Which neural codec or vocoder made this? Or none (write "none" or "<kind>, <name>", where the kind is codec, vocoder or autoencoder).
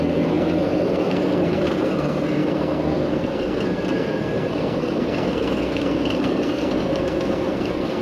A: codec, SNAC